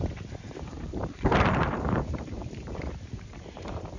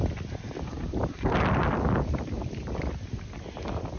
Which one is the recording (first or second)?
second